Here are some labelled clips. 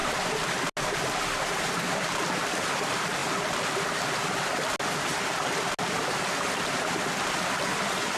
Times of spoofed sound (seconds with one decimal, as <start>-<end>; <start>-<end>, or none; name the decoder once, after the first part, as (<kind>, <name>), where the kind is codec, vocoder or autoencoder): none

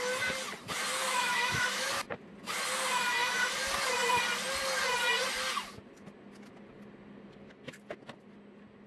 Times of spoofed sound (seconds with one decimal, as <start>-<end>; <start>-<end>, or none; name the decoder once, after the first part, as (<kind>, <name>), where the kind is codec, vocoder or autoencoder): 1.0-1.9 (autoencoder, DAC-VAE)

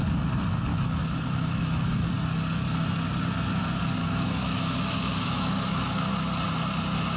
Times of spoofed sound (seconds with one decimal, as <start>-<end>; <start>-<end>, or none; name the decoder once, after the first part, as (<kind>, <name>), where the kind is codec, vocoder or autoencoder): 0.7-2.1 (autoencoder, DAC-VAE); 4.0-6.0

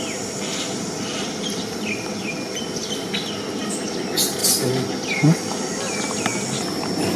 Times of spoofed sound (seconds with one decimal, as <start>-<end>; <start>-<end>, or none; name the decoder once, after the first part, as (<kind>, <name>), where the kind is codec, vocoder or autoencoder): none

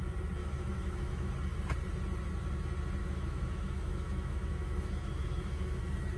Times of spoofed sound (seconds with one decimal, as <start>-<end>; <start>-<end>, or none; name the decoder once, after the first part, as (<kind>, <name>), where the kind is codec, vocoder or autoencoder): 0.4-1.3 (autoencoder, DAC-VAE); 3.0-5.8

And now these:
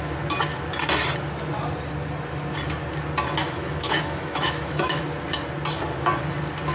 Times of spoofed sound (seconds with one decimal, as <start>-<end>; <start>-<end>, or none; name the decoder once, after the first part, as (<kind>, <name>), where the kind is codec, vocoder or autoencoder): 3.4-5.0 (autoencoder, DAC-VAE)

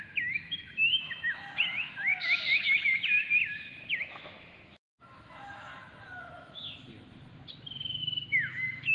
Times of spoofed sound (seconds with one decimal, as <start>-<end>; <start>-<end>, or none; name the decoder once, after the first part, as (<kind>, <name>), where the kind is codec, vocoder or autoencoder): 0.0-2.1 (autoencoder, DAC-VAE); 3.5-5.7; 6.3-6.9; 8.0-8.9

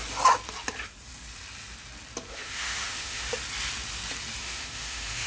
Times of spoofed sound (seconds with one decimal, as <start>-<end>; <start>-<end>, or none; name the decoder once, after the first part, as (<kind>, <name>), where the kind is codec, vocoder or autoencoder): 2.3-3.3 (autoencoder, DAC-VAE); 4.4-5.3